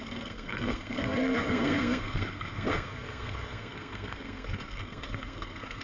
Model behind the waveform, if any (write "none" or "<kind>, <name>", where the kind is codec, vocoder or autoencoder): codec, SNAC